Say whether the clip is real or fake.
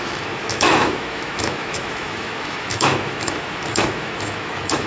fake